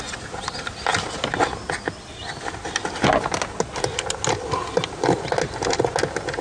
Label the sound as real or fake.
real